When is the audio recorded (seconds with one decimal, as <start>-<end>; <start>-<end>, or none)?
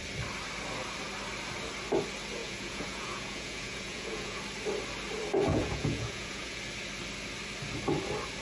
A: 0.0-2.4; 4.4-5.5; 6.6-8.4